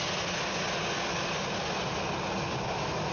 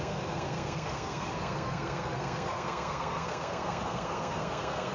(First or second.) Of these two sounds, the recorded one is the first